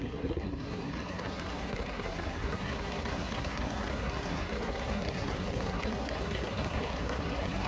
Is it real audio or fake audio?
fake